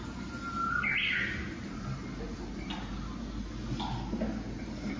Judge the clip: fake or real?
real